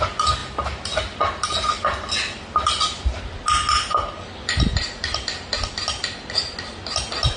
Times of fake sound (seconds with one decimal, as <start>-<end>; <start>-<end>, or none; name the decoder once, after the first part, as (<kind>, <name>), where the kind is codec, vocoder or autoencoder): none